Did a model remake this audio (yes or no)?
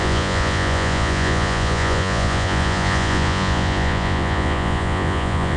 yes